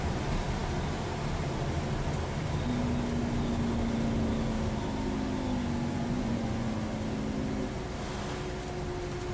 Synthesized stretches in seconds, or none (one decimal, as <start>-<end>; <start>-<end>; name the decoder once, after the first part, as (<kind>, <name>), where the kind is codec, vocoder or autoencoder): 5.9-6.7 (vocoder, Vocos)